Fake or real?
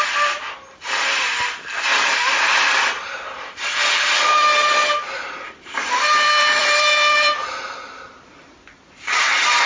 fake